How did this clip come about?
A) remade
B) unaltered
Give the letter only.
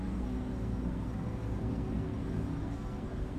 A